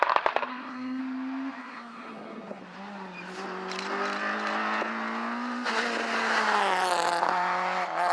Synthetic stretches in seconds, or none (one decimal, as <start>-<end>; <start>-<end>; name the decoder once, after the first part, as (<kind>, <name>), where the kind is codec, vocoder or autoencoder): 0.5-1.0 (codec, SNAC); 1.6-2.6